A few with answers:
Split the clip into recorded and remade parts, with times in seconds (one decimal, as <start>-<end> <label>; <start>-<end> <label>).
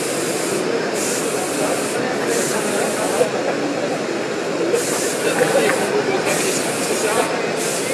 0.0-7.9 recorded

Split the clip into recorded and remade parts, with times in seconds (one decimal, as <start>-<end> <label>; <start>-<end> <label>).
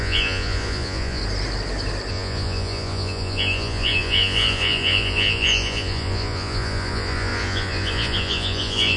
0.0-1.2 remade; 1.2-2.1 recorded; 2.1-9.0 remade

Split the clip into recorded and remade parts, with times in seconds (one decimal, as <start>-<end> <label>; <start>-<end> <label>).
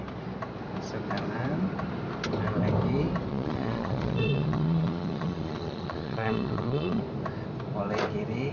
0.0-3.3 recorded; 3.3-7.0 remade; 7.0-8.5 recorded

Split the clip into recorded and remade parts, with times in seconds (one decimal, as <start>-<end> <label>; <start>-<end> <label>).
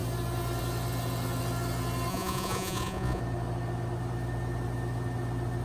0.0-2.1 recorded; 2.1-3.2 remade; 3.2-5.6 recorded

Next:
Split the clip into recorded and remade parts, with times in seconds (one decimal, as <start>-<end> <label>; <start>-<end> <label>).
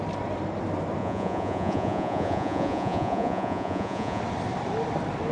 0.0-1.0 recorded; 1.0-4.2 remade; 4.2-5.3 recorded